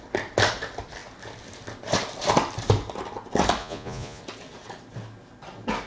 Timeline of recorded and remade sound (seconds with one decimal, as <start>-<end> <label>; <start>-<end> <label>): 0.0-3.6 recorded; 3.6-4.2 remade; 4.2-5.9 recorded